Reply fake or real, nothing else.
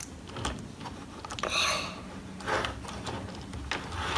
real